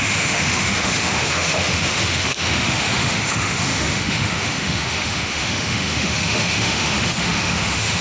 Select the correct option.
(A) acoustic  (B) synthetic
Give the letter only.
B